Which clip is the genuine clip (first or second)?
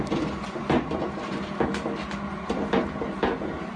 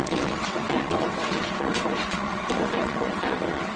first